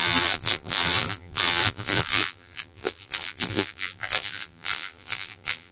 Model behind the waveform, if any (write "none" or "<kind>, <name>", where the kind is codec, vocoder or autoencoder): vocoder, BigVGAN v2